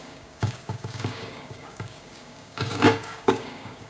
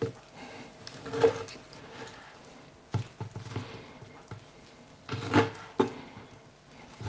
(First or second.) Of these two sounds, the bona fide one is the second